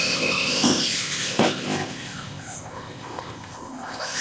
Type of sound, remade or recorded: remade